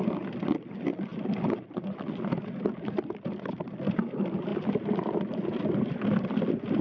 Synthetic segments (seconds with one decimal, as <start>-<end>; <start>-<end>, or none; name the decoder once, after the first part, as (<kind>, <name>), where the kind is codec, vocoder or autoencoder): 0.0-1.1 (vocoder, BigVGAN v2); 3.1-6.8